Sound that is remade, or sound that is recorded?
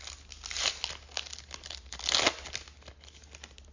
recorded